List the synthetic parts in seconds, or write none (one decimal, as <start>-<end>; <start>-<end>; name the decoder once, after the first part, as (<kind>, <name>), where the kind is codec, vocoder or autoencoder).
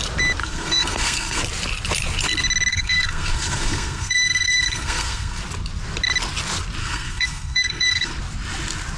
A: 0.4-1.4 (codec, SNAC); 2.7-5.4; 6.8-8.1